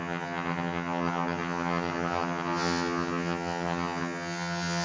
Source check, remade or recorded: remade